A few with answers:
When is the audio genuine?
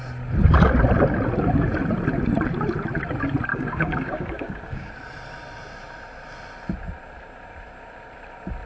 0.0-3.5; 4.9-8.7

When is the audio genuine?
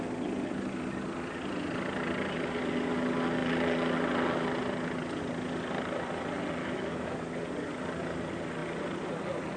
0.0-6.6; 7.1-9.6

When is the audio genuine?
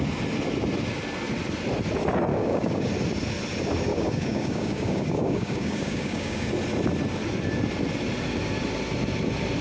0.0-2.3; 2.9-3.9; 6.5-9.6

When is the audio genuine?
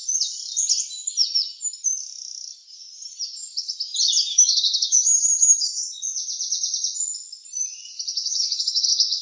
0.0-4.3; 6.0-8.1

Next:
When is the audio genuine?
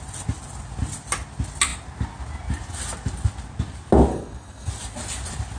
0.0-4.1; 4.7-5.6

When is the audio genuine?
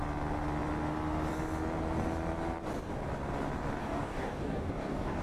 0.0-3.8